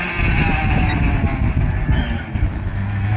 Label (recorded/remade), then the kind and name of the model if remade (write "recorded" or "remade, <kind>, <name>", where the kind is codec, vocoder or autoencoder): recorded